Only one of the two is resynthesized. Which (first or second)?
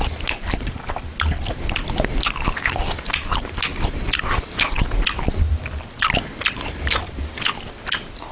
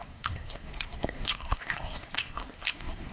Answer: second